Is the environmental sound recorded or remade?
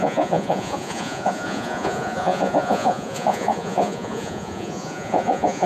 remade